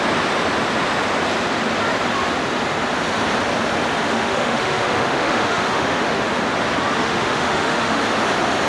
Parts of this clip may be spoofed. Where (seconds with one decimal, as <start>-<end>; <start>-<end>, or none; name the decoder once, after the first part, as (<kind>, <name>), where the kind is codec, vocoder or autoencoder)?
4.0-6.3 (autoencoder, DAC-VAE); 7.0-8.0

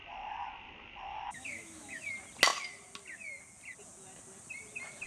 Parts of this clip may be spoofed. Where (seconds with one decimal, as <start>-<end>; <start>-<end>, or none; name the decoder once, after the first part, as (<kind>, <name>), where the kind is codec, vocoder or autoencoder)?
1.1-2.1 (autoencoder, DAC-VAE)

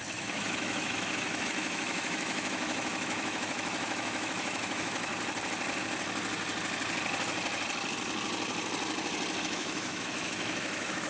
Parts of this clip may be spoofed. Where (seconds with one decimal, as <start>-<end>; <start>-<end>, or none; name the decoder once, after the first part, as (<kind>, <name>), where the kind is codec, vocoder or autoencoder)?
0.0-5.1 (autoencoder, DAC-VAE); 9.4-11.1

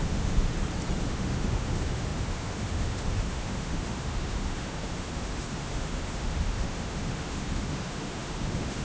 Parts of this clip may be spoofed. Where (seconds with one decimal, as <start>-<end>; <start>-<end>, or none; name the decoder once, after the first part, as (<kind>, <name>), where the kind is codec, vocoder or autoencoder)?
0.0-0.5 (autoencoder, DAC-VAE); 1.0-8.8